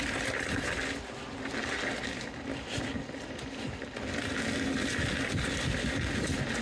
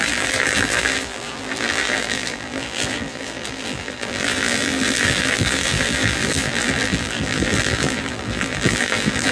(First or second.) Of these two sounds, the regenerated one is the second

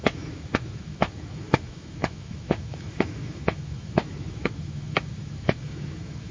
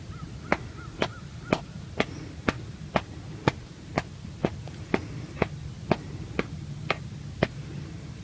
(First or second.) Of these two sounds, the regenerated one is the first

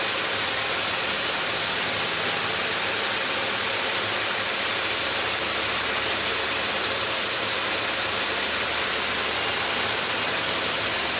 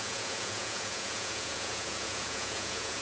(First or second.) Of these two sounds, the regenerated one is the second